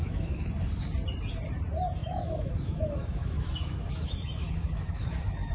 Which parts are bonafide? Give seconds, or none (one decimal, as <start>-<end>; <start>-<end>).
0.5-2.0

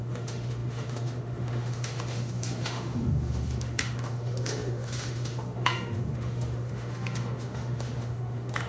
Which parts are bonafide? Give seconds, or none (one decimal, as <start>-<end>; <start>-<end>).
none